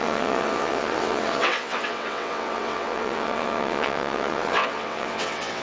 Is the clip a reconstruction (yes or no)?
yes